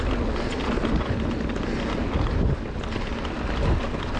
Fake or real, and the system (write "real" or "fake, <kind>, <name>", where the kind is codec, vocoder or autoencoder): real